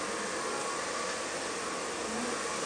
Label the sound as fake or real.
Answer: real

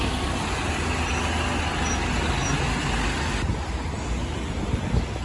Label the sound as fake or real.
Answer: real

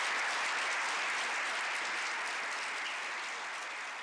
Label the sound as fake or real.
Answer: real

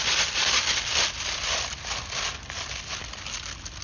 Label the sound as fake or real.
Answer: real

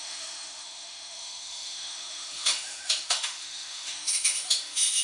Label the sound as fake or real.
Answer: fake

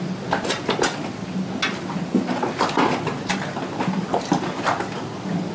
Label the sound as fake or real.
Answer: real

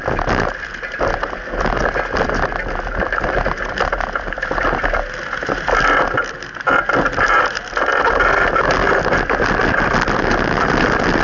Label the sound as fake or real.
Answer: real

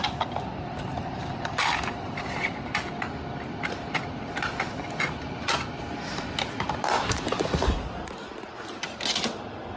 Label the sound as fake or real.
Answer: real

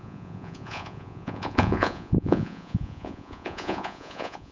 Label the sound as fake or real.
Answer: fake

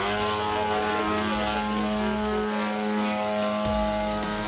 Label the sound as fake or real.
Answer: real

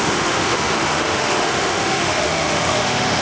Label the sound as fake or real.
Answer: fake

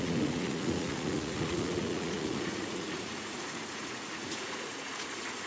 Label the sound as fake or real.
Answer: fake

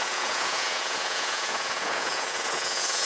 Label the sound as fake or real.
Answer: fake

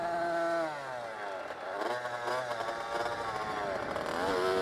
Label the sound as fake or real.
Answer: real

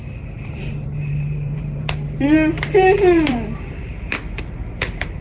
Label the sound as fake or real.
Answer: fake